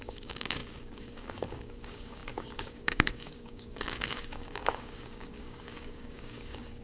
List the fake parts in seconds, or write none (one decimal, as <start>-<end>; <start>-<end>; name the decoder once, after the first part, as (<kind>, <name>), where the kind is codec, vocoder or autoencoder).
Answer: 0.0-6.8 (codec, DAC)